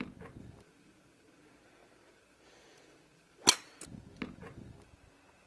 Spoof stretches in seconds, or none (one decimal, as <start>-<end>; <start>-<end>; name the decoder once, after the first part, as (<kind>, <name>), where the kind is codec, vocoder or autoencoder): none